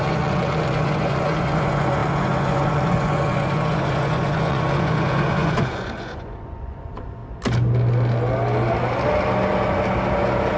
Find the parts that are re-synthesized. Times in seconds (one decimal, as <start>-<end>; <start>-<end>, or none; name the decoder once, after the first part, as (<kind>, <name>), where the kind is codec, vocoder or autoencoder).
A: 0.0-7.2 (vocoder, Vocos)

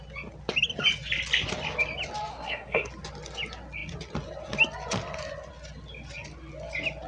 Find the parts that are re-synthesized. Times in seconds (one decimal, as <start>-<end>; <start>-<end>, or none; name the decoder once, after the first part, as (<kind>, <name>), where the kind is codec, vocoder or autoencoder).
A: 2.3-2.9 (codec, SNAC)

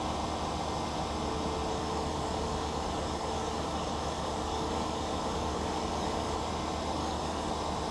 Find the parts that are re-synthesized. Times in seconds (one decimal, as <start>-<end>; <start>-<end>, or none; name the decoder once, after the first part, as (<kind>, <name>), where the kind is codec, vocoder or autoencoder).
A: 1.7-6.4 (codec, DAC); 7.0-7.5